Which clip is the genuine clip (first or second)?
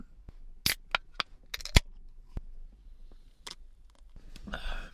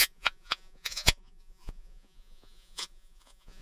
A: first